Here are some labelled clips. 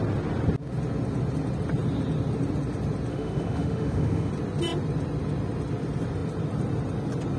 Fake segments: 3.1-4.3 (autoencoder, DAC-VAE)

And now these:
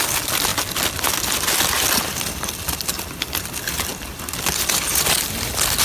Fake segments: none

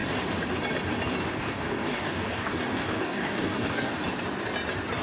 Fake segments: 1.4-3.9 (codec, DAC)

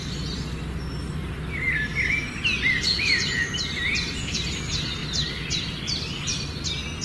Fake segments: 1.9-3.6 (vocoder, BigVGAN v2); 5.0-5.8

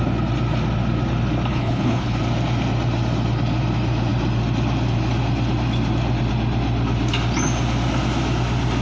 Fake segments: 1.5-2.2 (codec, HILCodec)

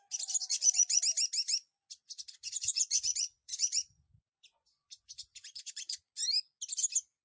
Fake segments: 0.4-1.0 (vocoder, Vocos); 2.4-6.0

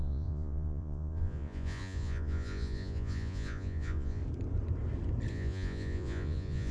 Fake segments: 0.0-4.2 (vocoder, Vocos); 5.3-6.7

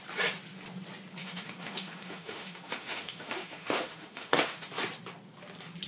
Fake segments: 1.2-4.7 (autoencoder, DAC-VAE)